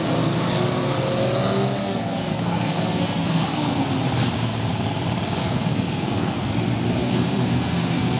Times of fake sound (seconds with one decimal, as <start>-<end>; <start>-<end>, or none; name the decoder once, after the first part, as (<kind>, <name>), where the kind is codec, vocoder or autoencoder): 1.8-3.9 (codec, SNAC); 5.4-6.5; 7.0-8.2